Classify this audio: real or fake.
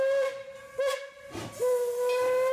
real